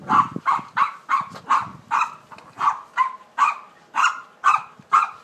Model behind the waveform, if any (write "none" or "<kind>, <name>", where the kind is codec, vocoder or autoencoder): none